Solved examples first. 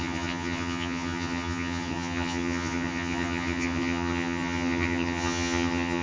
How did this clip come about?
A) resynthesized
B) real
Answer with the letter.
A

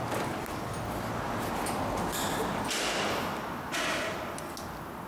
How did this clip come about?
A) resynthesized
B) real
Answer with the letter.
B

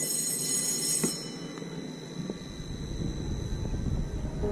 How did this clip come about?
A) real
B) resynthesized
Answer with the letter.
A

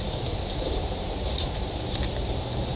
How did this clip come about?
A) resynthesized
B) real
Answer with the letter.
A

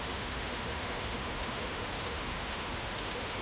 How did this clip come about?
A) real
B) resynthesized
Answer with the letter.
B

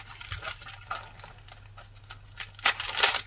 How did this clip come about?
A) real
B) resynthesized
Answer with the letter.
A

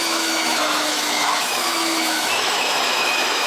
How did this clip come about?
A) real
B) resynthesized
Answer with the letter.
B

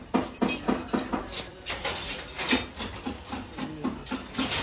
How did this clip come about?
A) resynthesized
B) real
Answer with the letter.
B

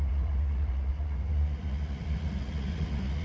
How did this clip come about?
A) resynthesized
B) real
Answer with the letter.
A